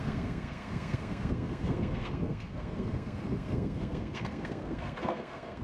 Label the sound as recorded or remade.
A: remade